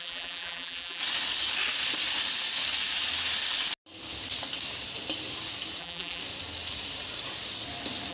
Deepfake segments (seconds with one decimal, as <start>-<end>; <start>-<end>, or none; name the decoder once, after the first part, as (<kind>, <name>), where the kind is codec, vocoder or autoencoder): 0.0-1.0 (vocoder, BigVGAN v2); 5.8-6.2